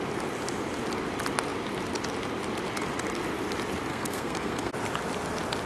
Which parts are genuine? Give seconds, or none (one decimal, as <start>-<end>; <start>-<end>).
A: 0.0-3.9; 4.7-5.7